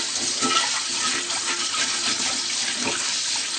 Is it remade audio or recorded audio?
recorded